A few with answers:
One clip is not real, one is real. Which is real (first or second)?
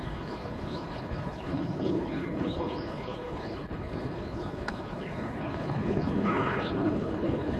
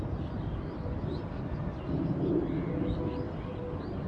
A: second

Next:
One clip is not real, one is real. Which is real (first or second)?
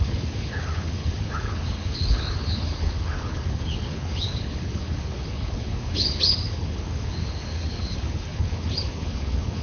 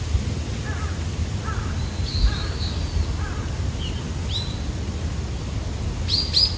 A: second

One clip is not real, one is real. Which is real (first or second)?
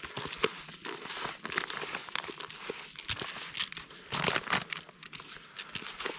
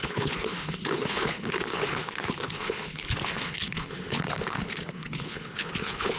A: first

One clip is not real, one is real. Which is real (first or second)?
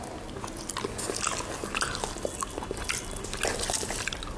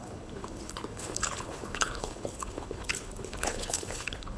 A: first